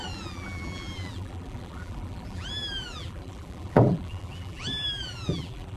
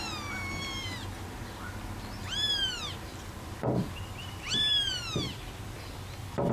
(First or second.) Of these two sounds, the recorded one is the second